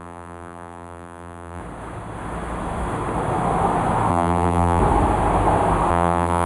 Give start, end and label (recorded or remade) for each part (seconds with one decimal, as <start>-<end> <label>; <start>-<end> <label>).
0.0-1.6 remade; 1.6-4.1 recorded; 4.1-4.8 remade; 4.8-5.9 recorded; 5.9-6.5 remade